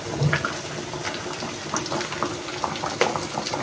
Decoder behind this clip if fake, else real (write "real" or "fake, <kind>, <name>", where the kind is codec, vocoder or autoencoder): real